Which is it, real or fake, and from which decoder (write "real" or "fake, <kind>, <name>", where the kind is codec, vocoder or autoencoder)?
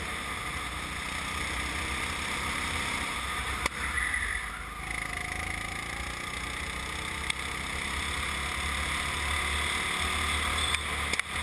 real